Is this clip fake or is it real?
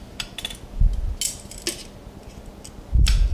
real